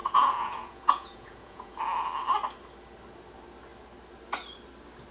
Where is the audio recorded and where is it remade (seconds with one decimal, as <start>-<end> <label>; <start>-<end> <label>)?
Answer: 0.0-1.8 remade; 1.8-5.1 recorded